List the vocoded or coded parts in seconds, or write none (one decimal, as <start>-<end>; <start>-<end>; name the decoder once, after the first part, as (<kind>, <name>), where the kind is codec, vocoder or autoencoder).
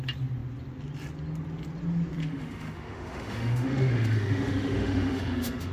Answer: 2.2-5.7 (autoencoder, DAC-VAE)